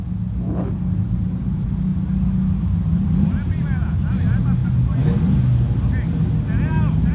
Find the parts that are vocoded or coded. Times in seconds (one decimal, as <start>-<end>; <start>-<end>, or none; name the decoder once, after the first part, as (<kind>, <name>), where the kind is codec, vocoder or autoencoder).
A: none